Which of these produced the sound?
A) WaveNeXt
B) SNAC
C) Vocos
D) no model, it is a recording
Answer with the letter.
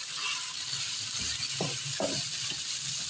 D